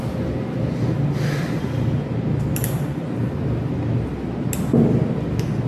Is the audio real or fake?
real